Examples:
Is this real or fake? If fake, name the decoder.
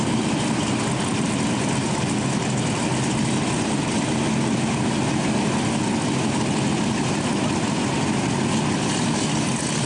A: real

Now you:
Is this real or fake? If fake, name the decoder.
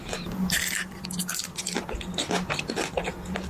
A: real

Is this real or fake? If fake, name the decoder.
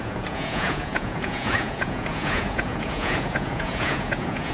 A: fake, vocoder, Vocos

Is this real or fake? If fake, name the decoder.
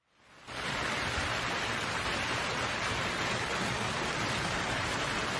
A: real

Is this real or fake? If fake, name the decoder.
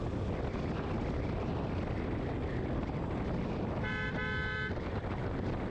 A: real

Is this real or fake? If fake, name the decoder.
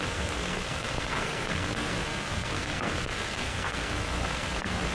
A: fake, codec, SNAC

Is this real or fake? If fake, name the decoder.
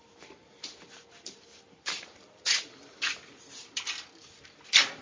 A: fake, vocoder, BigVGAN v2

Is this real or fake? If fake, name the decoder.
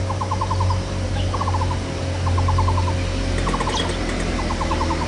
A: real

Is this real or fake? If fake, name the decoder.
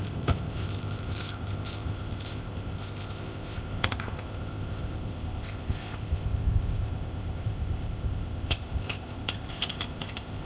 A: fake, codec, ZipCodec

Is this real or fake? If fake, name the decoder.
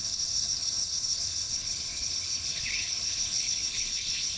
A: fake, codec, HILCodec